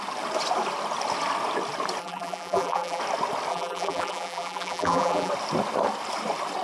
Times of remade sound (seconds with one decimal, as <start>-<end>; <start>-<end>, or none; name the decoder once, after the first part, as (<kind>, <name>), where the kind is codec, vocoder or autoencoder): 2.0-3.0 (vocoder, BigVGAN v2); 3.5-5.3